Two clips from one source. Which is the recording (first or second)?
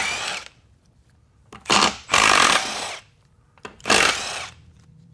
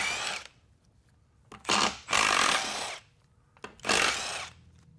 second